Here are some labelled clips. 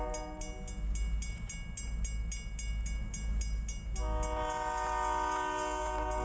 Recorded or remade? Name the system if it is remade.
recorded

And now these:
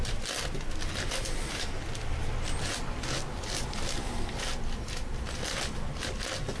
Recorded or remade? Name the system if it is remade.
recorded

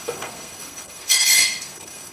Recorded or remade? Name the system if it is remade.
remade, codec, SNAC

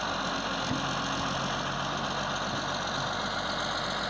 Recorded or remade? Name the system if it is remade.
recorded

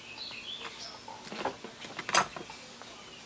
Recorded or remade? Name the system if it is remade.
recorded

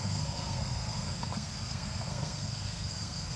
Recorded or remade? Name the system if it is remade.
remade, codec, SNAC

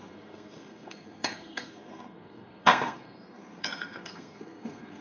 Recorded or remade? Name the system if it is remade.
remade, codec, SNAC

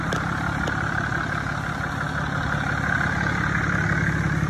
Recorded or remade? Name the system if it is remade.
recorded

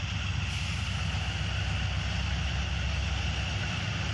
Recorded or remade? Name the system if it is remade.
recorded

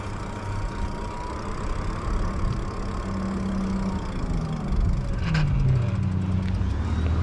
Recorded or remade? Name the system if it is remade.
recorded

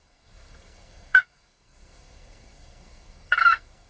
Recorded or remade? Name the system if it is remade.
remade, codec, SNAC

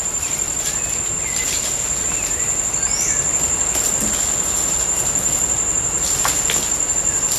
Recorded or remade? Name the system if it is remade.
recorded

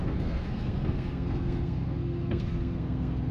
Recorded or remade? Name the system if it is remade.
remade, codec, SNAC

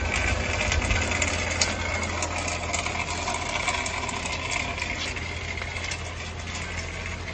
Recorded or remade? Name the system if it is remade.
recorded